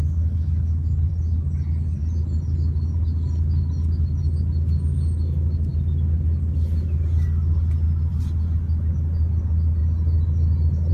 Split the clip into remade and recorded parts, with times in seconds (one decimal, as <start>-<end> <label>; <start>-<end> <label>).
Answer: 0.0-1.1 remade; 1.1-10.9 recorded